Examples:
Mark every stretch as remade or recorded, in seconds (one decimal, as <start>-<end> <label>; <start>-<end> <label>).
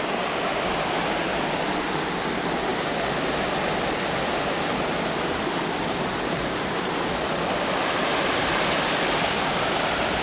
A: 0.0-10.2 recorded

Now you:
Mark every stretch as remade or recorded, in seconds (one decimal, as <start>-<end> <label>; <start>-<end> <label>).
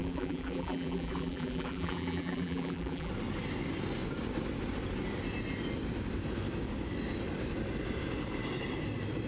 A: 0.0-3.1 remade; 3.1-9.3 recorded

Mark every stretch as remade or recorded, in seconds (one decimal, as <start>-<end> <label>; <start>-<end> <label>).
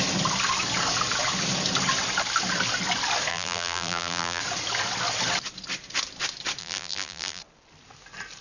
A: 0.0-3.3 recorded; 3.3-4.4 remade; 4.4-6.6 recorded; 6.6-7.4 remade; 7.4-8.4 recorded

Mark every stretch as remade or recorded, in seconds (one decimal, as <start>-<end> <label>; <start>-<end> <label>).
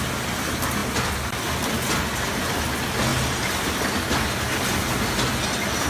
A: 0.0-5.9 recorded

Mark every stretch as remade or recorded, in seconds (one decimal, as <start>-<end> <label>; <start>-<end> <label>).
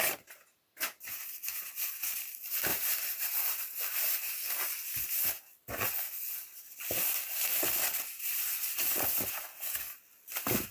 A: 0.0-2.7 recorded; 2.7-4.3 remade; 4.3-10.7 recorded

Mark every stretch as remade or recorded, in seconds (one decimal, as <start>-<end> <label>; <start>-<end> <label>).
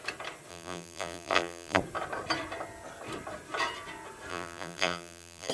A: 0.0-0.5 recorded; 0.5-1.8 remade; 1.8-4.3 recorded; 4.3-5.5 remade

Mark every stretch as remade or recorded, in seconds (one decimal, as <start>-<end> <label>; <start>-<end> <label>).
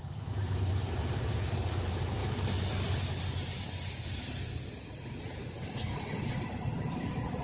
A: 0.0-2.2 remade; 2.2-5.2 recorded; 5.2-7.4 remade